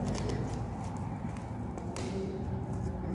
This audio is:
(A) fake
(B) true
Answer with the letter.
B